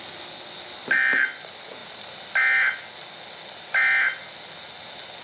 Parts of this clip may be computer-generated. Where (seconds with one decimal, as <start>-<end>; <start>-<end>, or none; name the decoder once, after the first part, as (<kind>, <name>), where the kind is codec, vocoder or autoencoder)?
none